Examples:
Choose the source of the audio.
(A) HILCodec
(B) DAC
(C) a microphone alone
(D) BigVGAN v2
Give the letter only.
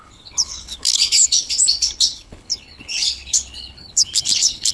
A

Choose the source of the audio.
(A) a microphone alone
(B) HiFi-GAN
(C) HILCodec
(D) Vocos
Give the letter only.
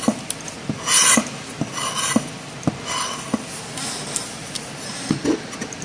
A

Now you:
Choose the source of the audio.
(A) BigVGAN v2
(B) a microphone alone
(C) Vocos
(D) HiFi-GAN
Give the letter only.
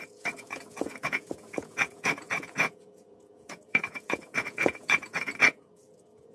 C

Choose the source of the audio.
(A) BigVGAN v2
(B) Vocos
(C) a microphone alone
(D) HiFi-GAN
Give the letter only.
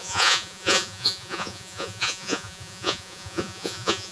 B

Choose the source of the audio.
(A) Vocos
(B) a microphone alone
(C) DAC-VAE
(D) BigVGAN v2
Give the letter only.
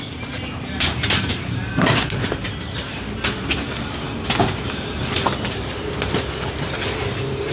B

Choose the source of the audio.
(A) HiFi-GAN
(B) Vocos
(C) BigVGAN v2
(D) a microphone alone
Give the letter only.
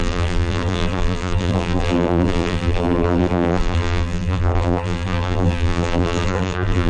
C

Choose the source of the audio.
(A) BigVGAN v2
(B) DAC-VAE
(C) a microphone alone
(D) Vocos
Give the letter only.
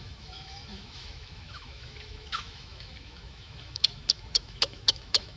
B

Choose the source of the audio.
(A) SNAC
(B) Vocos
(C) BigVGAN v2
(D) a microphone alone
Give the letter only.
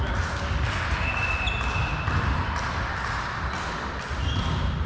D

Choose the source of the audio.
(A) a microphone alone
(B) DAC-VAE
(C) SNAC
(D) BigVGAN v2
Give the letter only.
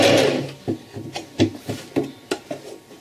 A